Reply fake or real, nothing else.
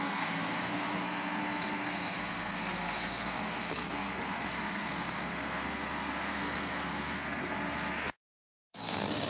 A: fake